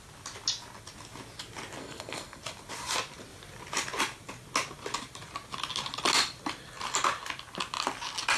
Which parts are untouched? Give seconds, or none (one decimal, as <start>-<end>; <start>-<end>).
0.0-1.8; 2.4-8.4